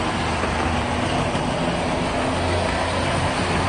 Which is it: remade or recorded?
recorded